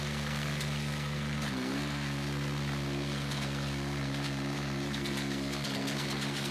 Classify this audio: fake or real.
fake